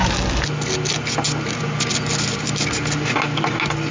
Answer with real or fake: real